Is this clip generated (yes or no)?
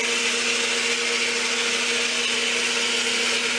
no